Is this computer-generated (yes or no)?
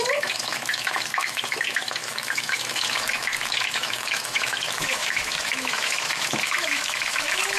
yes